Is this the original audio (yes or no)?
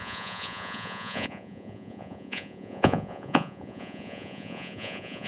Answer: no